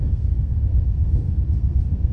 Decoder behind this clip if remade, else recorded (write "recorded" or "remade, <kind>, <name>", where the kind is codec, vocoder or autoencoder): remade, codec, SNAC